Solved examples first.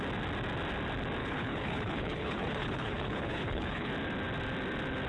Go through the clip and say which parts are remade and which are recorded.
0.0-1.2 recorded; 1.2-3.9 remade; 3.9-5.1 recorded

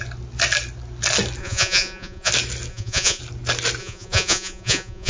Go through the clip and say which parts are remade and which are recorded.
0.0-1.4 recorded; 1.4-2.3 remade; 2.3-2.7 recorded; 2.7-3.2 remade; 3.2-3.8 recorded; 3.8-5.1 remade

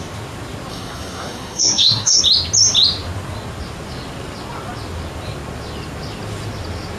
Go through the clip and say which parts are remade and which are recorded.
0.0-0.7 recorded; 0.7-2.2 remade; 2.2-7.0 recorded

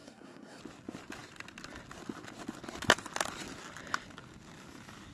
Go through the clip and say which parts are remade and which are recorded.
0.0-0.6 remade; 0.6-5.1 recorded

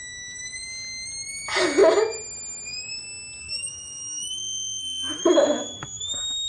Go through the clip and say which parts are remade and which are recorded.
0.0-3.4 recorded; 3.4-6.5 remade

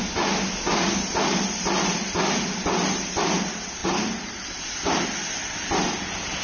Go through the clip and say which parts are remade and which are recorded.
0.0-3.8 recorded; 3.8-4.6 remade; 4.6-6.4 recorded

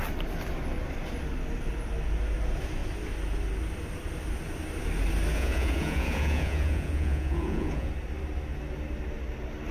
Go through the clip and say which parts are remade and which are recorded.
0.0-5.3 recorded; 5.3-7.9 remade; 7.9-9.7 recorded

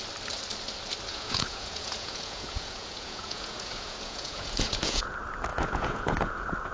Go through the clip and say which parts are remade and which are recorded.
0.0-1.1 recorded; 1.1-5.1 remade; 5.1-5.5 recorded; 5.5-6.3 remade; 6.3-6.7 recorded